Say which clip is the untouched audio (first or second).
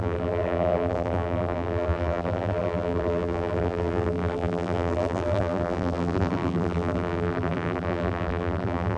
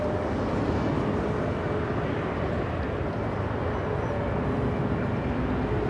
second